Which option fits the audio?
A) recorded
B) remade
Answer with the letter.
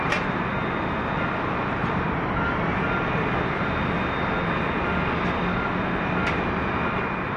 A